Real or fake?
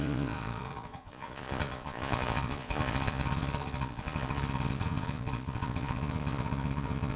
fake